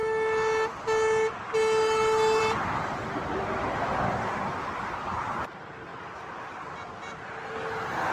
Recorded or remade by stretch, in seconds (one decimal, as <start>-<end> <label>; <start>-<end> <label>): 0.0-8.1 recorded